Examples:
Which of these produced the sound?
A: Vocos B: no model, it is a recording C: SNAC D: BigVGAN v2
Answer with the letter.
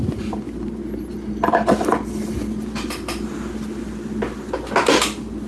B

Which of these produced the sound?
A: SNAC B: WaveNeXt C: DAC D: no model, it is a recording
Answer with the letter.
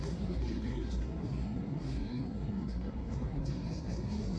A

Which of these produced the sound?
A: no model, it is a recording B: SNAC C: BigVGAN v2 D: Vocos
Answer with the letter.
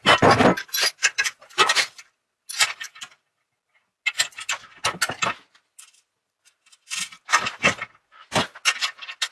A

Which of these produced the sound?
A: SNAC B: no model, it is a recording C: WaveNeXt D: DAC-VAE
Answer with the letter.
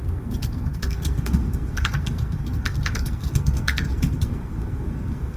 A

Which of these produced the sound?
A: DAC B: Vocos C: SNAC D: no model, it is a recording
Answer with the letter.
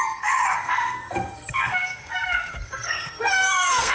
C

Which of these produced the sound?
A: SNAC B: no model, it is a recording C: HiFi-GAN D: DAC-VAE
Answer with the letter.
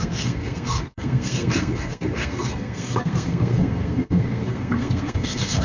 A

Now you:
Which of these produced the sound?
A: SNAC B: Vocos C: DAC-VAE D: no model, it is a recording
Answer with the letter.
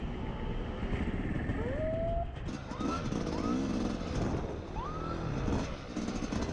D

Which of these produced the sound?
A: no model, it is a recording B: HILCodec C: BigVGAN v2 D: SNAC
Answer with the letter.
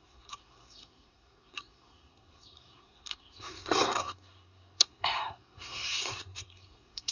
D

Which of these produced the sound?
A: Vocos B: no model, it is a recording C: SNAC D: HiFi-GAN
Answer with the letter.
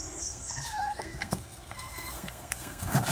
C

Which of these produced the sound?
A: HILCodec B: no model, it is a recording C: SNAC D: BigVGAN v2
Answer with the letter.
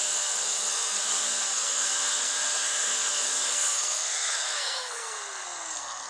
C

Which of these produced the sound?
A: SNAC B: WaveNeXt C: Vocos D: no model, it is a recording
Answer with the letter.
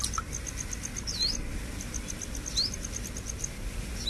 D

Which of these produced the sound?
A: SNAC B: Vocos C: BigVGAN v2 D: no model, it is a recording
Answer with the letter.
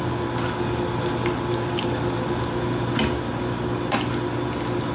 D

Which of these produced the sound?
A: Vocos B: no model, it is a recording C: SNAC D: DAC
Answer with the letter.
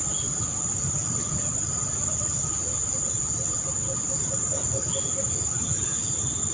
B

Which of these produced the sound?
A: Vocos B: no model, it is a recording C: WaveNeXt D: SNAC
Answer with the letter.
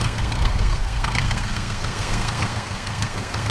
D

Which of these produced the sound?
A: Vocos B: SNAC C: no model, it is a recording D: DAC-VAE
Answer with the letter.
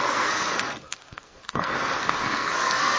B